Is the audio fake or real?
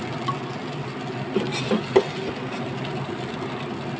real